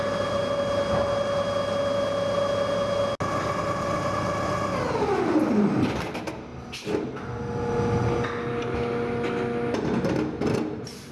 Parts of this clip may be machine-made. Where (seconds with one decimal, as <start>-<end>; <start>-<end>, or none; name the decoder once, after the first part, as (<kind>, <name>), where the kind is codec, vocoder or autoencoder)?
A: none